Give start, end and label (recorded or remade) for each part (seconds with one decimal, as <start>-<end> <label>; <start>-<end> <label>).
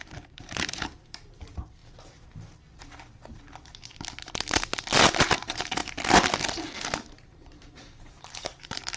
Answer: 0.0-1.8 remade; 1.8-5.2 recorded; 5.2-5.8 remade; 5.8-7.1 recorded; 7.1-9.0 remade